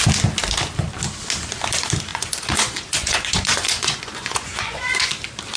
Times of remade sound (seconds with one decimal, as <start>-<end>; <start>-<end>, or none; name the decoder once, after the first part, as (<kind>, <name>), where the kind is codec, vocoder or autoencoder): 2.1-5.1 (vocoder, Vocos)